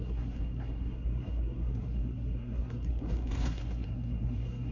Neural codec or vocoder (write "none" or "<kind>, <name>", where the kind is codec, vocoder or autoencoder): codec, SNAC